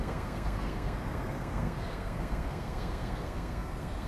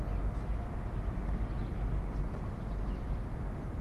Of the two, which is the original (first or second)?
second